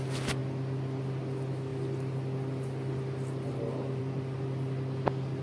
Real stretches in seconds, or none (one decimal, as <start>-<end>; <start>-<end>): 0.0-5.4